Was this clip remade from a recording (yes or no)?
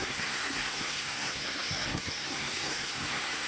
yes